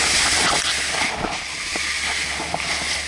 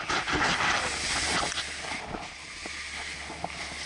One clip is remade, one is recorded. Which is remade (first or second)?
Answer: first